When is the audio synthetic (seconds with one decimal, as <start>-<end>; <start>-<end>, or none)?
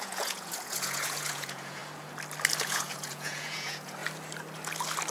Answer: 0.0-1.8; 2.6-4.0